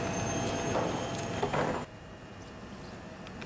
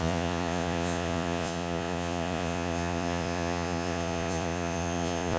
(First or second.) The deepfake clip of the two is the second